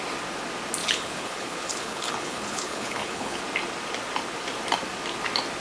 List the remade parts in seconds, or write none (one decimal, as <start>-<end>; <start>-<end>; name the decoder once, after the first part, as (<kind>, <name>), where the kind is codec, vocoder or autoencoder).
0.8-3.4 (codec, HILCodec)